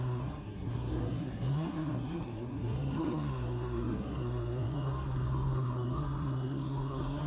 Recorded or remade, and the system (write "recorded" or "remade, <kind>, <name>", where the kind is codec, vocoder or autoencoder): remade, codec, SNAC